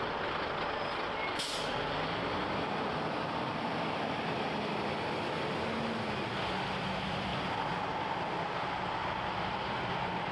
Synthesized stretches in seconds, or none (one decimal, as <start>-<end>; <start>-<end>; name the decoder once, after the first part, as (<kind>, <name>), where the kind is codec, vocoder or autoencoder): none